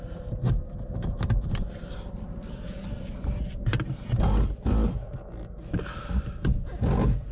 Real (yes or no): yes